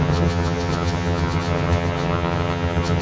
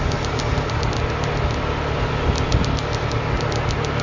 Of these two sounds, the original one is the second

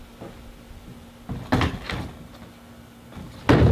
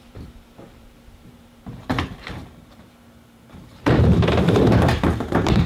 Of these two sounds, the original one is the first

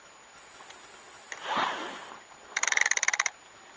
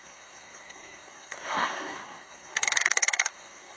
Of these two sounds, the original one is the first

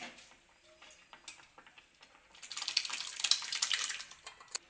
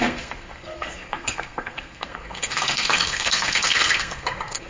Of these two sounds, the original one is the first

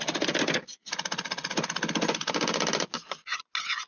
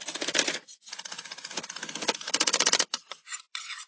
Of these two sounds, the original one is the first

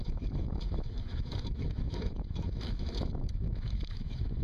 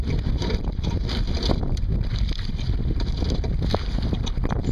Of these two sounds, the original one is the second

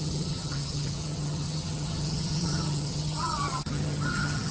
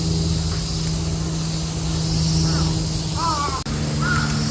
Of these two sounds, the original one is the second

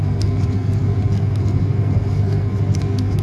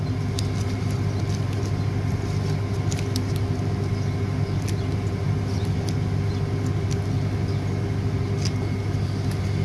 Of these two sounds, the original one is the second